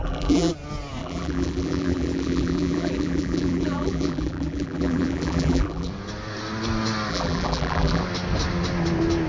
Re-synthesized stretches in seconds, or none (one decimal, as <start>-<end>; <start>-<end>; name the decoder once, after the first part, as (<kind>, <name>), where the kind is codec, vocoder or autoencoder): 0.0-0.5 (vocoder, BigVGAN v2); 1.0-5.9; 7.1-8.0